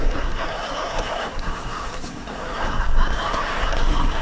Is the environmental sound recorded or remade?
remade